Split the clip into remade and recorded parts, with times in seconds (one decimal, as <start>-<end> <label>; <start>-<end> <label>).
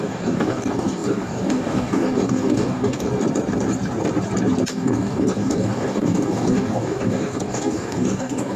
0.0-3.1 remade; 3.1-4.7 recorded; 4.7-8.6 remade